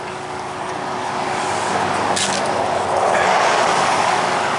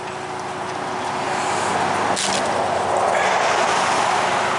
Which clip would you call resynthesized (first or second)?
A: first